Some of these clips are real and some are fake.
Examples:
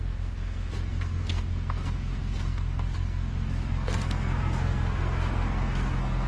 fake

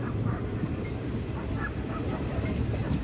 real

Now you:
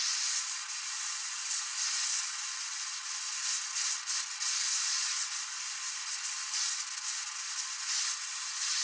real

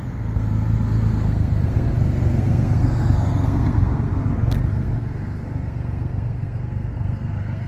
fake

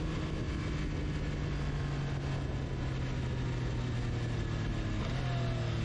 real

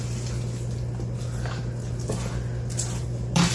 real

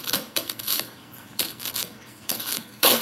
fake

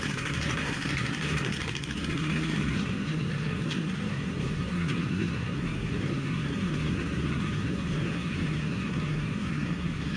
fake